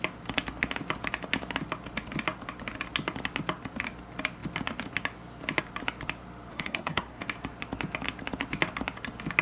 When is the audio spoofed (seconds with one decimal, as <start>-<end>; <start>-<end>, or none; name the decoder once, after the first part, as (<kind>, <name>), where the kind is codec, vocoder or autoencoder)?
6.5-7.2 (codec, SNAC)